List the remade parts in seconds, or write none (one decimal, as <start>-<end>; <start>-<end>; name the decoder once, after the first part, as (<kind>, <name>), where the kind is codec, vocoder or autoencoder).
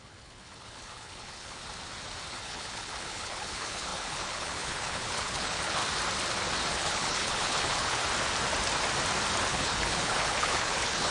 0.0-1.6 (codec, HILCodec); 2.3-5.8; 6.7-8.0; 9.5-11.1